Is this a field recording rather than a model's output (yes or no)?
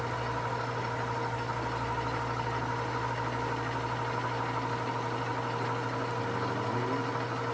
yes